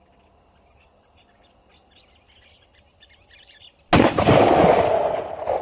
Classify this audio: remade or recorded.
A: recorded